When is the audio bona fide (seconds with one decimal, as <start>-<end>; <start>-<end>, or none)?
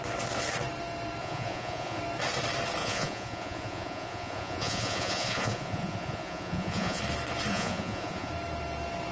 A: 0.0-1.2; 2.0-2.8; 7.0-7.5; 8.3-9.1